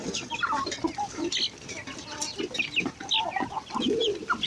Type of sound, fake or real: real